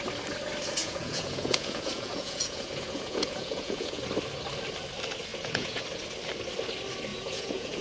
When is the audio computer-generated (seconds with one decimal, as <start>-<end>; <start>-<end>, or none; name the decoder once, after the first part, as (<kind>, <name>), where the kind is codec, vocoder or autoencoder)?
0.8-4.0 (vocoder, Vocos); 5.3-5.8; 7.1-7.8